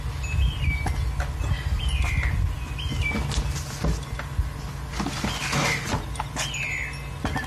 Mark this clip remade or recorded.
recorded